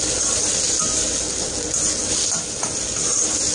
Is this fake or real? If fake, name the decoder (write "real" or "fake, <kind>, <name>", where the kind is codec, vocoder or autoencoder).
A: real